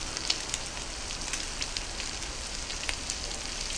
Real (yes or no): yes